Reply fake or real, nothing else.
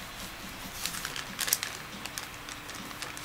real